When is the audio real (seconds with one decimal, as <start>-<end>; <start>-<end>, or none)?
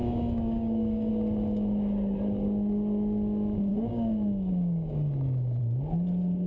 1.1-3.7; 5.6-6.5